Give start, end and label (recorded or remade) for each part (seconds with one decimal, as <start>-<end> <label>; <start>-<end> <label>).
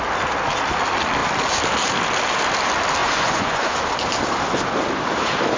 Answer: 0.0-3.0 recorded; 3.0-3.8 remade; 3.8-5.6 recorded